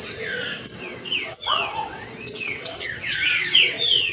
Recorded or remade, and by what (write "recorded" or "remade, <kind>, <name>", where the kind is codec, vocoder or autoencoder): remade, vocoder, WaveNeXt